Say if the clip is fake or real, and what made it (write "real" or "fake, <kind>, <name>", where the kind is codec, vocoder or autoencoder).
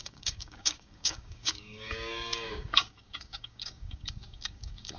fake, codec, DAC